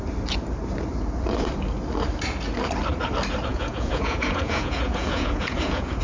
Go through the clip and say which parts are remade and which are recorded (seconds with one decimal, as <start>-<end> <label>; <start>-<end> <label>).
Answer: 0.0-3.5 recorded; 3.5-6.0 remade